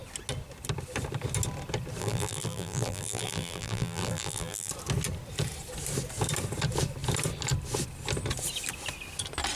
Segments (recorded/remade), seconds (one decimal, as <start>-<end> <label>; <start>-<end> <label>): 0.0-2.0 recorded; 2.0-4.7 remade; 4.7-9.6 recorded